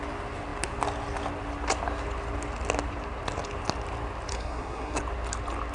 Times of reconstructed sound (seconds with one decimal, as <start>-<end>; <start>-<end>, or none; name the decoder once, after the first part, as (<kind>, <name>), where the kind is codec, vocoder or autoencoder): 4.3-5.0 (codec, SNAC)